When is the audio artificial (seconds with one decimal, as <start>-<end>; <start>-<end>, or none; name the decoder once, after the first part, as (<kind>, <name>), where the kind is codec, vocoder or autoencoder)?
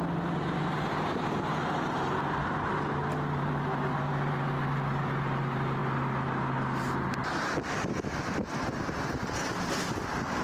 none